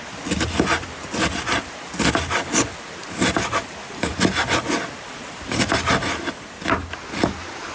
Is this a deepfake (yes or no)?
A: no